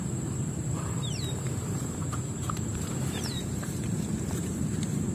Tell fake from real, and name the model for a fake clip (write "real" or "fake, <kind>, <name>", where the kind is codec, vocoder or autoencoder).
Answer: fake, vocoder, BigVGAN v2